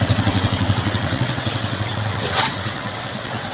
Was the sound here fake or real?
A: fake